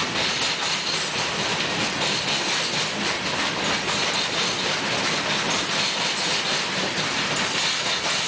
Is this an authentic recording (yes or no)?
yes